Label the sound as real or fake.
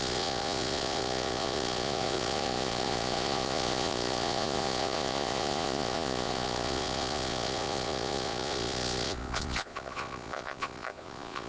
fake